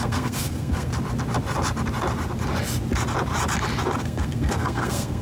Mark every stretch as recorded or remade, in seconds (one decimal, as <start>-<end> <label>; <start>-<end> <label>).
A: 0.0-0.9 remade; 0.9-4.0 recorded; 4.0-5.2 remade